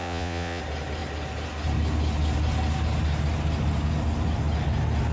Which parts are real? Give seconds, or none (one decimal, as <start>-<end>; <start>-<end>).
0.6-5.1